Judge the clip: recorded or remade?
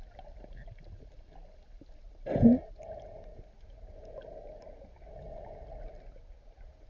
recorded